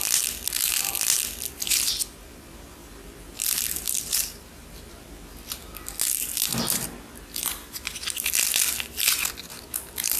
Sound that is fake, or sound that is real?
real